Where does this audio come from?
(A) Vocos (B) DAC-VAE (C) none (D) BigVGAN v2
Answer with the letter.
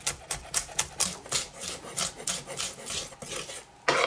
C